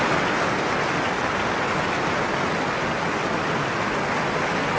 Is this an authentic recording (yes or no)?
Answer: yes